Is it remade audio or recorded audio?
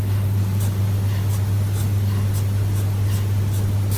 recorded